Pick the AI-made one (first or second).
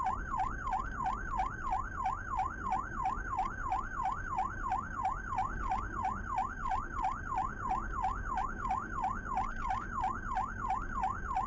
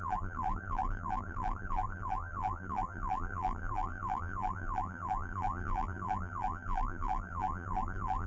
second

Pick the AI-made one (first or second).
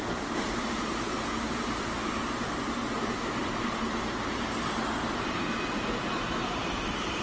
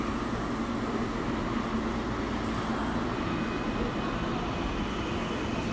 first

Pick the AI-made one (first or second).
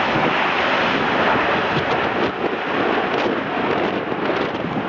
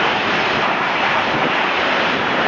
second